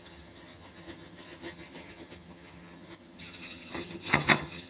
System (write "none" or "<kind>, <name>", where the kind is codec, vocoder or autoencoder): vocoder, HiFi-GAN